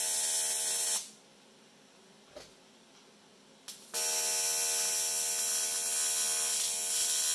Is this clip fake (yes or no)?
no